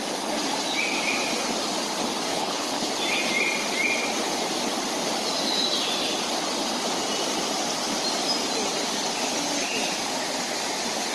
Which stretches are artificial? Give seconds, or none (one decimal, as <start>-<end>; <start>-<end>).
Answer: 2.3-2.9